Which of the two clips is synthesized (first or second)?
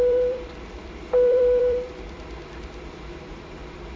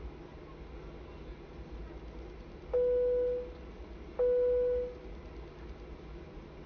first